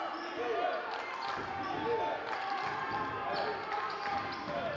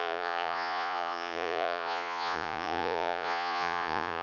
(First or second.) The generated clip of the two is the second